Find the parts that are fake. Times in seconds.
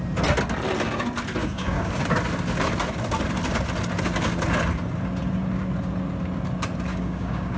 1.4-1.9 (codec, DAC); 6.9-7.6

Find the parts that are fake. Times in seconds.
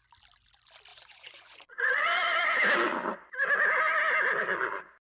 0.9-2.6 (vocoder, Vocos)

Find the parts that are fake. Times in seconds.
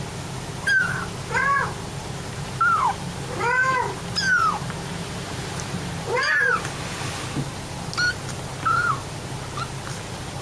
4.6-6.7 (vocoder, BigVGAN v2)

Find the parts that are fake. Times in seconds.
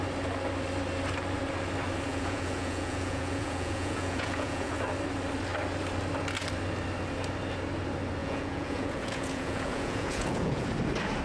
2.1-4.8 (vocoder, Vocos); 8.2-10.7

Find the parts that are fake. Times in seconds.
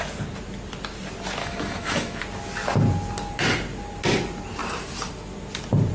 1.4-2.2 (autoencoder, DAC-VAE)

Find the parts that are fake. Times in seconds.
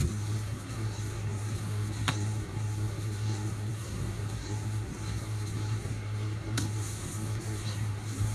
0.0-8.3 (codec, SNAC)